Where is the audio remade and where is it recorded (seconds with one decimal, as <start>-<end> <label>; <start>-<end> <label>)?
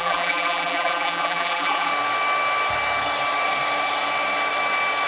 0.0-1.9 remade; 1.9-5.1 recorded